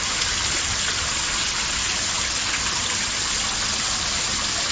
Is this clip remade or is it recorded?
recorded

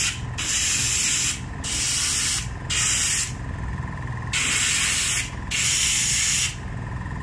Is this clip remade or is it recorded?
recorded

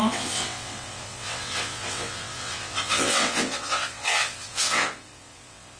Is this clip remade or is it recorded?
remade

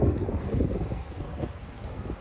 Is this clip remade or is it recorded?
remade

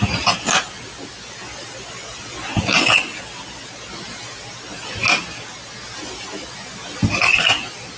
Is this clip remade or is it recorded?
recorded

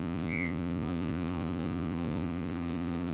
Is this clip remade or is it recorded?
remade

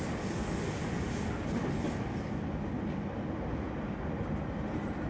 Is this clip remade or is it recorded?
recorded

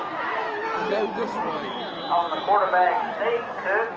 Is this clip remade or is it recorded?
recorded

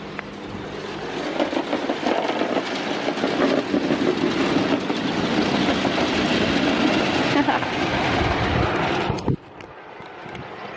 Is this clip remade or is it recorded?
recorded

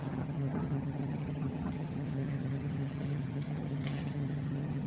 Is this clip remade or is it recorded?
remade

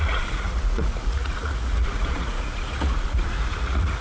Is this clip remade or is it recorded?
remade